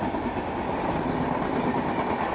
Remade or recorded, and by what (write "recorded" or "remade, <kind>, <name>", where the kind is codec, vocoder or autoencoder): recorded